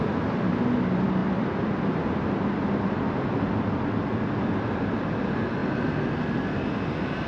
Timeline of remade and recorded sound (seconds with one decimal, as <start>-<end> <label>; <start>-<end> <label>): 0.0-7.3 recorded